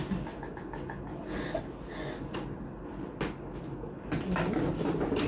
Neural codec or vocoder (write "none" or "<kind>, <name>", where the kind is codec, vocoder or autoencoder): none